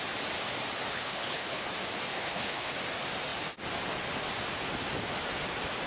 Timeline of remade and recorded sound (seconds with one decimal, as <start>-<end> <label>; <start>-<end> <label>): 0.0-0.9 recorded; 0.9-1.7 remade; 1.7-2.1 recorded; 2.1-2.7 remade; 2.7-5.9 recorded

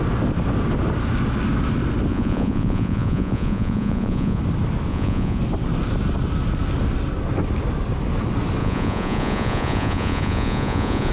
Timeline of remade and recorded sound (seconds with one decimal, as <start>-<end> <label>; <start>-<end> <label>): 0.0-2.1 recorded; 2.1-4.4 remade; 4.4-4.9 recorded; 4.9-5.4 remade; 5.4-8.6 recorded; 8.6-11.1 remade